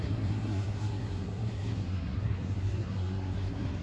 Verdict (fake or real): fake